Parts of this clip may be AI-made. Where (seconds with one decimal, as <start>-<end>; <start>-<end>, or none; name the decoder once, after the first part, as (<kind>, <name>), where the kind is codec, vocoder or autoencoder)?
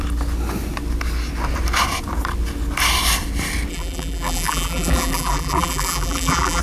3.7-6.6 (vocoder, BigVGAN v2)